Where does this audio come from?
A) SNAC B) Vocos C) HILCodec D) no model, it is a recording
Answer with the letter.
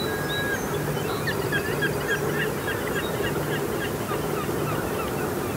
D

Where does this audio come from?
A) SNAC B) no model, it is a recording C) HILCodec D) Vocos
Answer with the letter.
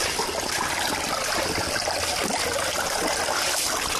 B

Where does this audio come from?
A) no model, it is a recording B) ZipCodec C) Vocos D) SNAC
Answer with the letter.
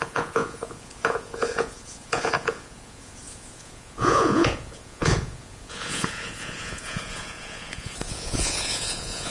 C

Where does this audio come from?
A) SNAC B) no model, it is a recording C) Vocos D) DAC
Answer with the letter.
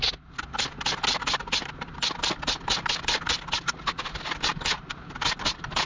B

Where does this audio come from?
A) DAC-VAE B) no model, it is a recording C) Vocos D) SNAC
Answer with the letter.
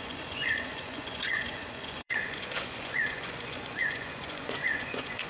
C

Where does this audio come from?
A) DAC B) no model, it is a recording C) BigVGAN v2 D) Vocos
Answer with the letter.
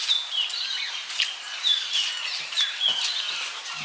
B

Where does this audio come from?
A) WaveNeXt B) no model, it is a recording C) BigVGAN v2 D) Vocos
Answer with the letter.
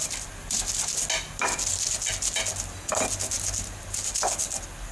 B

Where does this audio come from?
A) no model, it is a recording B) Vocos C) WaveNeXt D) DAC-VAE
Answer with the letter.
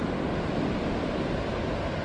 A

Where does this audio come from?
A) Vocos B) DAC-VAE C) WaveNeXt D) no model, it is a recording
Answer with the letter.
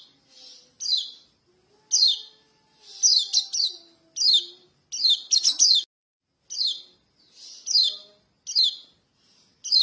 D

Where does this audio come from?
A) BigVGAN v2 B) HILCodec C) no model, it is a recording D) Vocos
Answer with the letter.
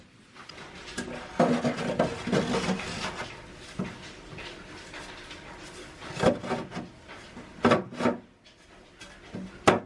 C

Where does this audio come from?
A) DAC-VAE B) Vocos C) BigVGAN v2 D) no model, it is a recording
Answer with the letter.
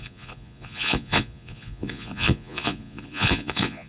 B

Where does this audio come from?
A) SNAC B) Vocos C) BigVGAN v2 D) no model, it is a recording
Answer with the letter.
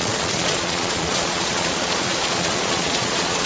B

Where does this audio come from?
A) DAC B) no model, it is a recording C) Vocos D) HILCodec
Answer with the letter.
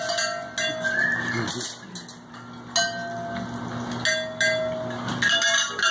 B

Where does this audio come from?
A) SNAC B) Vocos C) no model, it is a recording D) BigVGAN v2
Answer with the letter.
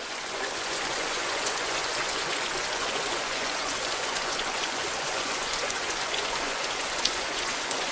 B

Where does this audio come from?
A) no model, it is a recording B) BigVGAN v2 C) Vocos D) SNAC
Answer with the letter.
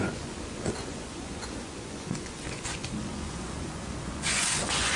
C